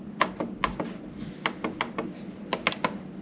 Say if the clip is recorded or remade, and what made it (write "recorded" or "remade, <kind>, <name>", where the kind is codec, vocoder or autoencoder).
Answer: recorded